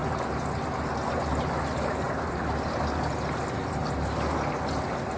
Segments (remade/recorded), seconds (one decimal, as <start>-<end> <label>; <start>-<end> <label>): 0.0-5.2 recorded